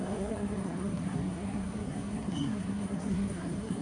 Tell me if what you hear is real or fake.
fake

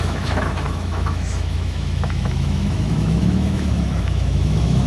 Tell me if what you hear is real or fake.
fake